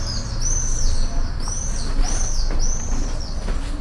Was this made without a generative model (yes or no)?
yes